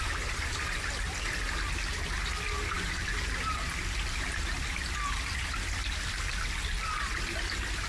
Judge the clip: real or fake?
real